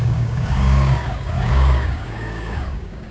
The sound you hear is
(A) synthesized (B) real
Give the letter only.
A